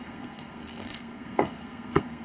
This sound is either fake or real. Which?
fake